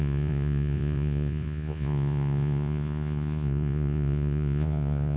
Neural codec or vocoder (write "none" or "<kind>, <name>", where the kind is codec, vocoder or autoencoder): vocoder, Vocos